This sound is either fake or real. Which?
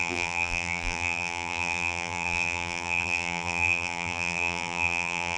fake